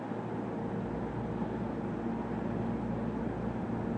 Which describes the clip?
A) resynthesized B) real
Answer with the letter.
B